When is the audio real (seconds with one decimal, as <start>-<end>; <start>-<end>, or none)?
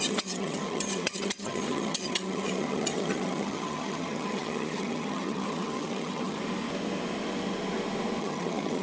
6.4-8.2